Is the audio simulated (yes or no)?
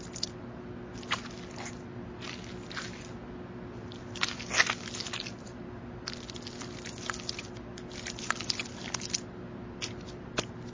no